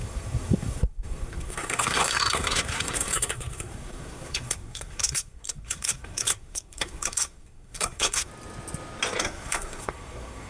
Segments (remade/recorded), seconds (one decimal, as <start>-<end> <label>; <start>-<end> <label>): 0.0-8.3 remade; 8.3-9.2 recorded; 9.2-10.5 remade

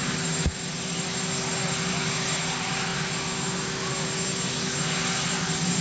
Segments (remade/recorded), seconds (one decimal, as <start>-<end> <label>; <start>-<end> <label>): 0.0-5.8 recorded

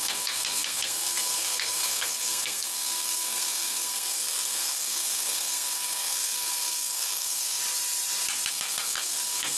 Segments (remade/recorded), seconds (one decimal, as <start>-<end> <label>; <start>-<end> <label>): 0.0-7.6 remade; 7.6-8.5 recorded; 8.5-9.6 remade

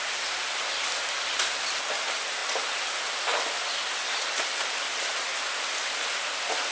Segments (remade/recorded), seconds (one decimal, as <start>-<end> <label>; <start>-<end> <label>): 0.0-6.7 recorded

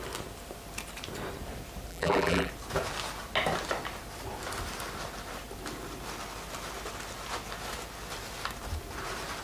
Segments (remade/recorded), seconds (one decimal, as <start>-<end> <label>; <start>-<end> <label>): 0.0-1.9 recorded; 1.9-2.5 remade; 2.5-9.4 recorded

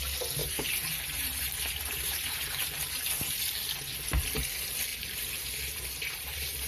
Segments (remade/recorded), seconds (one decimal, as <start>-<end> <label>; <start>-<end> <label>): 0.0-0.4 recorded; 0.4-3.5 remade; 3.5-4.9 recorded; 4.9-6.7 remade